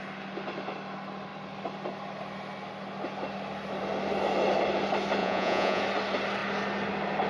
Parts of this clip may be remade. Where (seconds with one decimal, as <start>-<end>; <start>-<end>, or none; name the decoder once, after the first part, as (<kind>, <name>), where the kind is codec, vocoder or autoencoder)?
5.2-5.8 (vocoder, Vocos)